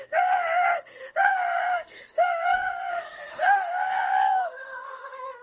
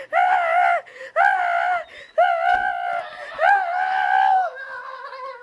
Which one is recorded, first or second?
second